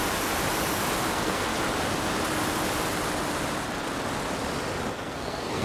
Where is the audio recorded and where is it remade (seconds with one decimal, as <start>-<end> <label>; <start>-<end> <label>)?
0.0-1.1 recorded; 1.1-1.5 remade; 1.5-4.9 recorded; 4.9-5.6 remade